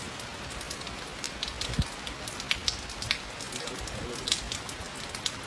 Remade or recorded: recorded